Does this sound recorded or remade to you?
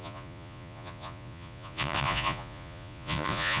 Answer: remade